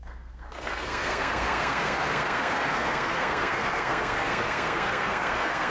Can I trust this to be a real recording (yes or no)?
no